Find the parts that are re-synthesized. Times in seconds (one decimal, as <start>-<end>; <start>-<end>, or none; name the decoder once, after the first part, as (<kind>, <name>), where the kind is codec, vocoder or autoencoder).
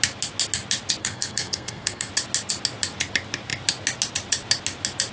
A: 1.0-2.1 (codec, SNAC)